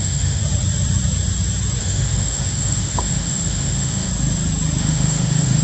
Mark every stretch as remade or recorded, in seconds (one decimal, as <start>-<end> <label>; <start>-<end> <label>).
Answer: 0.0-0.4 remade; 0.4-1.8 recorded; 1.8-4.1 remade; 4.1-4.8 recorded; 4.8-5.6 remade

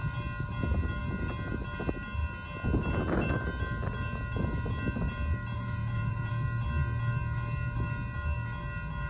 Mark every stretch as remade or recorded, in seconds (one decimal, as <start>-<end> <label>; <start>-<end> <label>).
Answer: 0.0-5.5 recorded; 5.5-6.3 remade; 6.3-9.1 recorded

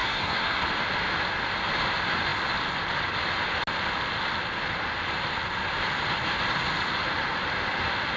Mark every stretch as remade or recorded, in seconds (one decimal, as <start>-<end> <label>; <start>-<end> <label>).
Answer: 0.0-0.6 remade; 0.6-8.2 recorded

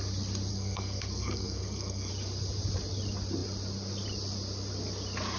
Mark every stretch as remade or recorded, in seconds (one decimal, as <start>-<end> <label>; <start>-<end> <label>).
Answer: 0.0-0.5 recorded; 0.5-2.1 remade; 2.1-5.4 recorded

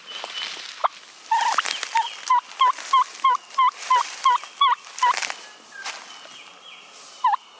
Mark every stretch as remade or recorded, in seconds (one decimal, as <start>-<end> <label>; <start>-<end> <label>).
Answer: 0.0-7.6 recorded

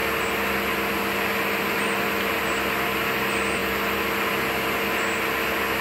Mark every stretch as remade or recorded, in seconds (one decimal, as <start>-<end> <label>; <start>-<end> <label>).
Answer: 0.0-5.8 recorded